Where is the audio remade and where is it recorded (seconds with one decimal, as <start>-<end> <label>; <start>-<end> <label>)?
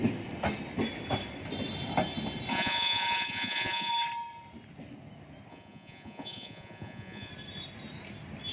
0.0-2.5 recorded; 2.5-3.9 remade; 3.9-5.5 recorded; 5.5-7.3 remade; 7.3-8.5 recorded